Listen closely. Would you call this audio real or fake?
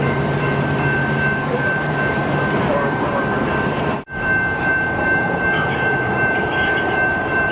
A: fake